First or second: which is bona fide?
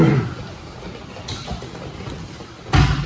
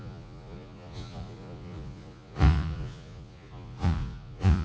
first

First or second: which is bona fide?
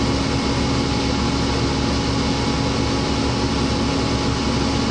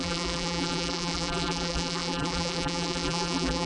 first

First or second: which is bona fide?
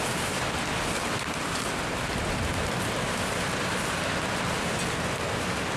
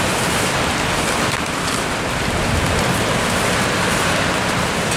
first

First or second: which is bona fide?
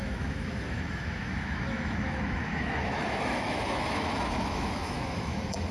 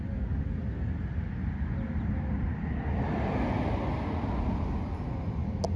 second